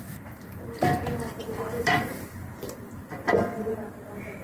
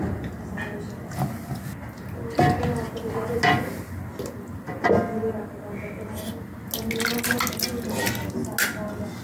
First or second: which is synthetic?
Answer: first